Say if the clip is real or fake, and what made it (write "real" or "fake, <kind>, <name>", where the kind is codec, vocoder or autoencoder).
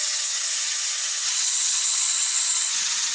fake, vocoder, HiFi-GAN